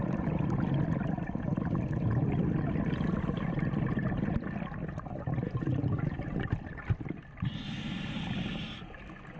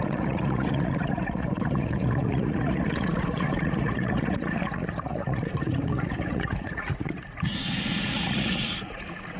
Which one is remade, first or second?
second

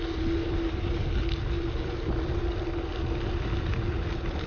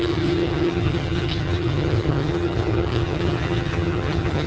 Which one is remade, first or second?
second